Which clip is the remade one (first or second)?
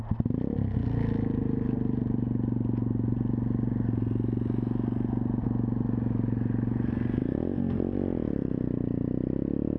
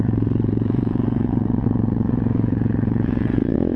second